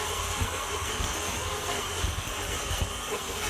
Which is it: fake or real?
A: fake